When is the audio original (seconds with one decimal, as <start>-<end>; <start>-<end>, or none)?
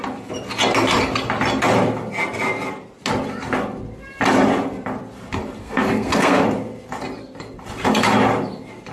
0.0-5.6; 6.4-8.9